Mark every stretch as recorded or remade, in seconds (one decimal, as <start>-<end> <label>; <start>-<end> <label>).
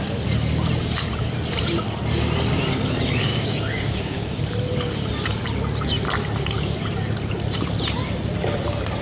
0.0-3.3 recorded; 3.3-4.4 remade; 4.4-9.0 recorded